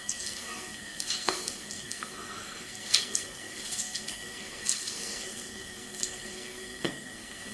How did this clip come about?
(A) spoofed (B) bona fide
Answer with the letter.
A